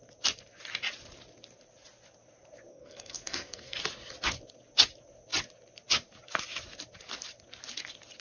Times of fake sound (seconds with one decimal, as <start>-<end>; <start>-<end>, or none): 2.7-3.8